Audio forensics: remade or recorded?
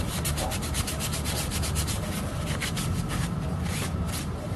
recorded